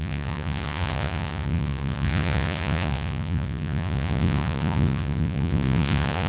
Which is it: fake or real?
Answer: fake